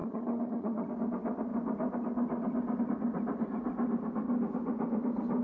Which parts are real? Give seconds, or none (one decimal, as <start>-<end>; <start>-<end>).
0.9-5.4